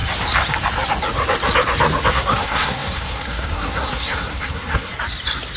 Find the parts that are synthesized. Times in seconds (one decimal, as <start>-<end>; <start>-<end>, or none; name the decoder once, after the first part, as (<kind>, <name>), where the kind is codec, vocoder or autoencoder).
2.1-4.9 (codec, SNAC)